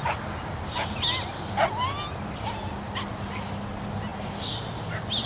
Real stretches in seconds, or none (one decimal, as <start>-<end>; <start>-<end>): 0.0-5.3

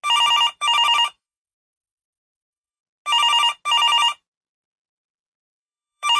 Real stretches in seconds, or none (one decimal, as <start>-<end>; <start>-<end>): 0.0-0.6; 2.8-5.4

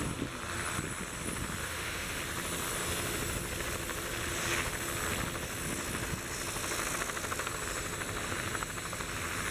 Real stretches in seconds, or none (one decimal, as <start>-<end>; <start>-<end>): 0.0-1.6; 2.2-9.5

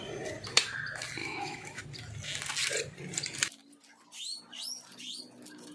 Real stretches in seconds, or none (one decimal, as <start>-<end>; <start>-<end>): 0.0-1.2; 1.8-5.7

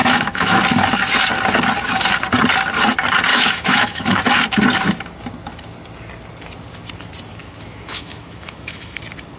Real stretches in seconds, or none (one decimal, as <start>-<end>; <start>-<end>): 0.6-3.3; 4.2-7.4; 9.0-9.4

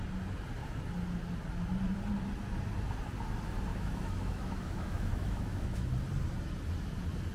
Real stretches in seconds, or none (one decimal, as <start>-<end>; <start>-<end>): 0.0-3.7; 5.9-7.3

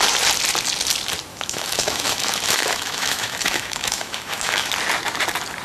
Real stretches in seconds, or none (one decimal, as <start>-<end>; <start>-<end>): 0.0-1.3; 4.7-5.6

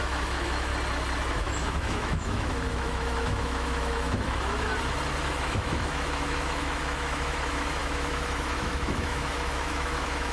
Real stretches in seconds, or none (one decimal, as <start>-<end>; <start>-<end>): 0.7-1.3; 4.7-5.3